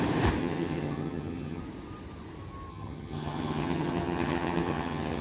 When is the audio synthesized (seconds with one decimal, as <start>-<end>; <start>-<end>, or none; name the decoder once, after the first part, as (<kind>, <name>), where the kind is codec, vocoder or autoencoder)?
0.4-1.6 (vocoder, HiFi-GAN); 2.7-5.2